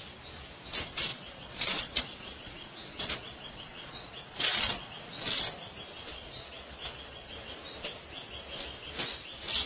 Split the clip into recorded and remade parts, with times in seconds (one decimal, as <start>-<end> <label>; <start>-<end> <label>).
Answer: 0.0-1.1 recorded; 1.1-4.9 remade; 4.9-6.1 recorded; 6.1-7.3 remade; 7.3-9.7 recorded